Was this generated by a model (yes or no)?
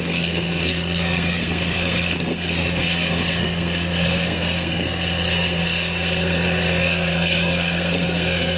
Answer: yes